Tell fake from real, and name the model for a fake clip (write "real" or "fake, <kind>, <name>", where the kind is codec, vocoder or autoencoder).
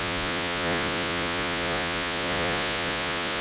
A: fake, vocoder, Vocos